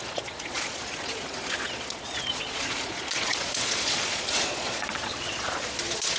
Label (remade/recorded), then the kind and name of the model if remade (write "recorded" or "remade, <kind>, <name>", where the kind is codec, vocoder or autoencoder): remade, vocoder, Vocos